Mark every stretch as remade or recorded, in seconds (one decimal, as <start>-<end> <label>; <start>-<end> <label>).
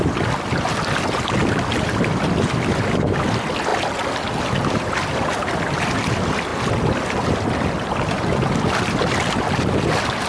0.0-10.3 recorded